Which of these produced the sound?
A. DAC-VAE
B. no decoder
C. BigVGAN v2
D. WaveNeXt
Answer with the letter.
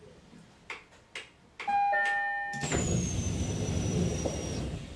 B